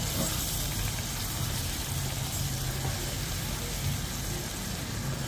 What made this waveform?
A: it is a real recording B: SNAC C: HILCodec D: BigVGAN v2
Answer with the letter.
A